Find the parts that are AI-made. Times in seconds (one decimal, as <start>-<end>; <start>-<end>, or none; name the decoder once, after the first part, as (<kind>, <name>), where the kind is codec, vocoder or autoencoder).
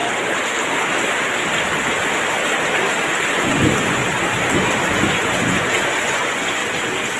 3.3-4.0 (vocoder, Vocos); 4.9-6.6